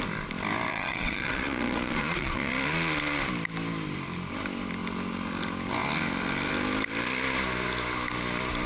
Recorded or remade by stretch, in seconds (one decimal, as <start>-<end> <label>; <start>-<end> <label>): 0.0-0.7 recorded; 0.7-2.5 remade; 2.5-8.7 recorded